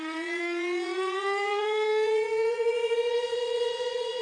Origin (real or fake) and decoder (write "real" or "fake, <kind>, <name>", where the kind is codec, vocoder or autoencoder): fake, vocoder, Vocos